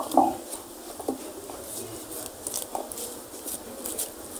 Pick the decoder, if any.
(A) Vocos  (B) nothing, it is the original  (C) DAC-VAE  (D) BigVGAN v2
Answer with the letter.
B